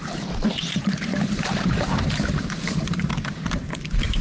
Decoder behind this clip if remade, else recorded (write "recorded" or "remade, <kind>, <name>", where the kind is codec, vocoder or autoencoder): remade, vocoder, BigVGAN v2